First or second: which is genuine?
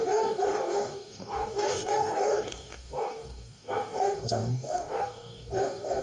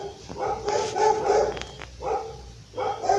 second